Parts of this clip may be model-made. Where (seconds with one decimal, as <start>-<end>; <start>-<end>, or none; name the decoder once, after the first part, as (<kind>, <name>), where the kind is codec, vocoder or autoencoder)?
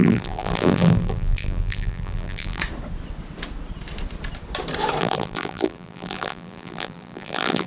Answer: 0.0-2.6 (vocoder, BigVGAN v2); 5.0-7.7